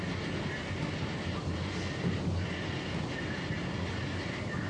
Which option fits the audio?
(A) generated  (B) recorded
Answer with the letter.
B